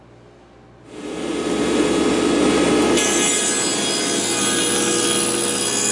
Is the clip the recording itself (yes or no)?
yes